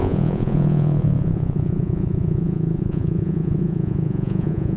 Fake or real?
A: fake